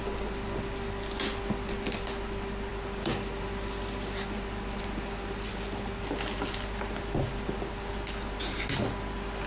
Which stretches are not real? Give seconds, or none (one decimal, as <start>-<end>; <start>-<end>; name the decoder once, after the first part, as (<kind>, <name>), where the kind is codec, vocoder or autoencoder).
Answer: none